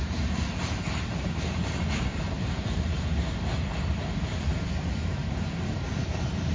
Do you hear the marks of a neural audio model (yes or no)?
yes